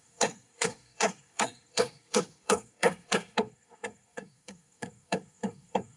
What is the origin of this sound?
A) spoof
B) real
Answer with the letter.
A